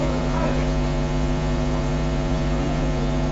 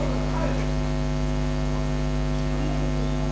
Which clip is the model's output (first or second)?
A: first